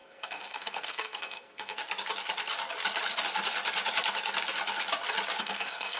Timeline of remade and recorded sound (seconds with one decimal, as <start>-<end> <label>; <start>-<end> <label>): 0.0-1.8 remade; 1.8-5.4 recorded; 5.4-6.0 remade